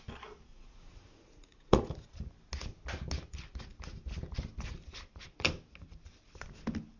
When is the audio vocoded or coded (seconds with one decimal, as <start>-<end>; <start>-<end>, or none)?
0.5-1.9